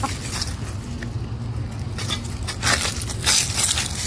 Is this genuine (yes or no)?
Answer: yes